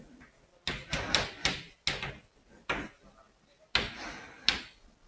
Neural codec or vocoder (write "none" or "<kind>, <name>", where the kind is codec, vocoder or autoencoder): none